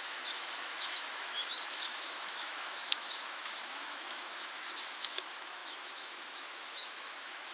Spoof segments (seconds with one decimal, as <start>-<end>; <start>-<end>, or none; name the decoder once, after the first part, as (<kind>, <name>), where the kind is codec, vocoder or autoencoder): 0.0-7.5 (autoencoder, DAC-VAE)